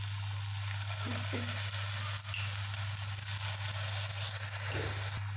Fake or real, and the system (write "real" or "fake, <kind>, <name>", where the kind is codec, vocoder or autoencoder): real